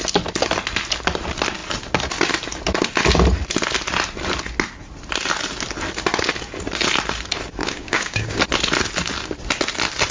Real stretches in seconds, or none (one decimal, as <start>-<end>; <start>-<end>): 0.0-7.6; 8.4-10.1